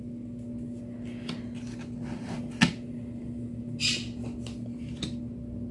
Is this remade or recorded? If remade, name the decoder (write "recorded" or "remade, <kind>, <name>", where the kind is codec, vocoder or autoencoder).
recorded